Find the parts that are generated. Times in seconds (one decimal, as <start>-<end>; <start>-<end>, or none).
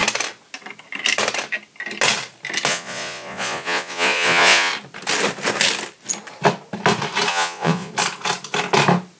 2.7-4.7; 7.3-7.9